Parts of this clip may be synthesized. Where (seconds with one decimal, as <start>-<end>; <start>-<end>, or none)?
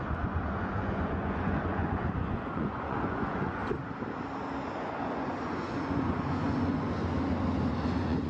0.0-3.6; 4.7-7.0; 7.9-8.3